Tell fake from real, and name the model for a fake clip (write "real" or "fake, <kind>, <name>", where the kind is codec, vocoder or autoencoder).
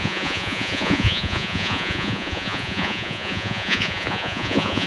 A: fake, vocoder, Vocos